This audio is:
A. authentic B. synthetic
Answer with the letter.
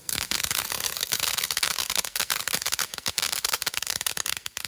B